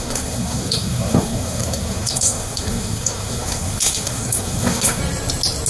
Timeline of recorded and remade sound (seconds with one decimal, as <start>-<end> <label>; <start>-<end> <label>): 0.0-5.0 remade; 5.0-5.7 recorded